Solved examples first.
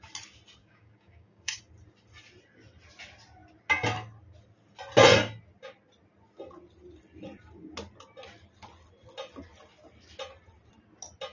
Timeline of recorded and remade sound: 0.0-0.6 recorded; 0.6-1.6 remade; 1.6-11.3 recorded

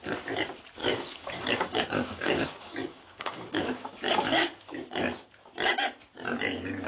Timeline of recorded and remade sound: 0.0-0.8 recorded; 0.8-4.9 remade; 4.9-6.9 recorded